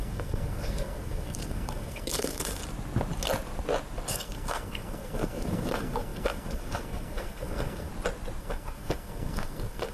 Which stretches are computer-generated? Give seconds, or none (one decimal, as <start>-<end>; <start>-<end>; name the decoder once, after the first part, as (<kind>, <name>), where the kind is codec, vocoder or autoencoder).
0.0-2.6 (codec, SNAC); 4.1-7.9; 8.4-9.9

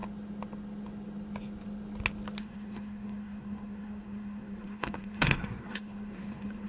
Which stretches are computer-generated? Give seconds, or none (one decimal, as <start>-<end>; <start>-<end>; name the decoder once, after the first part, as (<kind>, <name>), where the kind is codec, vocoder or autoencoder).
2.4-6.7 (codec, SNAC)

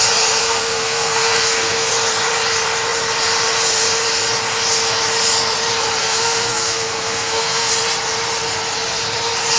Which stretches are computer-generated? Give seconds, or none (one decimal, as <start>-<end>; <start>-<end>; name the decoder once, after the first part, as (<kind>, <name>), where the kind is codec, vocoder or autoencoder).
0.4-1.9 (codec, SNAC); 6.0-7.7

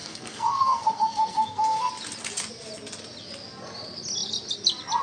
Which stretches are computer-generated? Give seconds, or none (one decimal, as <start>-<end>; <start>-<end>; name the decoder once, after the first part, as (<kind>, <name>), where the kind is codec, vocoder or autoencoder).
0.0-1.9 (codec, SNAC)

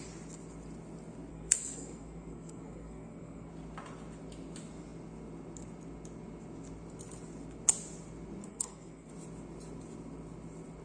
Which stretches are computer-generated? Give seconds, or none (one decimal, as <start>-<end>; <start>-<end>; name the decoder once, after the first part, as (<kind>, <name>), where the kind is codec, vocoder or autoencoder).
1.3-3.5 (codec, SNAC); 8.5-9.1